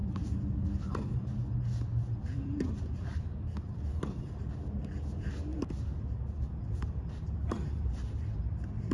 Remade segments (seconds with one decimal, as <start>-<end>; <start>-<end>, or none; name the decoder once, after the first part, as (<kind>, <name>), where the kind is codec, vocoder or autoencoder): 0.0-1.1 (vocoder, BigVGAN v2); 2.2-2.7; 3.1-4.0